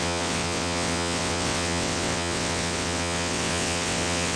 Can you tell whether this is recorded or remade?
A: remade